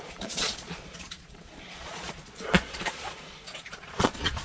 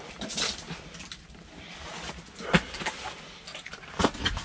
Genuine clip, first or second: second